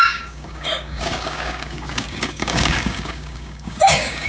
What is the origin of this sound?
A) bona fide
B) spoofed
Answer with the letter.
B